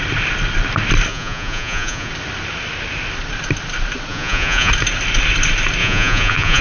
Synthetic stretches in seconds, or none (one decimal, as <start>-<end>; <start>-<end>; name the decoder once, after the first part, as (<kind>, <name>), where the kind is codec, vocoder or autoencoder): 1.1-2.1 (vocoder, Vocos); 4.1-4.7; 5.8-6.6